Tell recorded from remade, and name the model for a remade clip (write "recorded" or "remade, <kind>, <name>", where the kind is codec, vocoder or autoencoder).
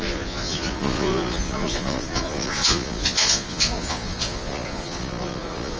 remade, vocoder, Vocos